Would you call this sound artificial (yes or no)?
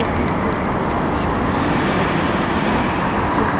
no